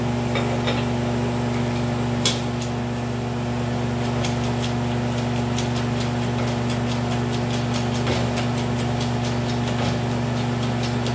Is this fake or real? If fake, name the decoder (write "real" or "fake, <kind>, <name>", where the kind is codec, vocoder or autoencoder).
real